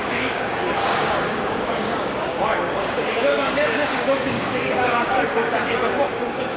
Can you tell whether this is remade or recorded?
remade